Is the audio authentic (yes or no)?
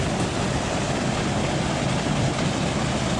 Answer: yes